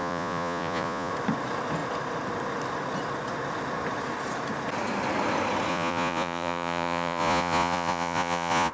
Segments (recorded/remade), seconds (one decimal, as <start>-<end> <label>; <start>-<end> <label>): 0.0-1.1 remade; 1.1-5.7 recorded; 5.7-8.7 remade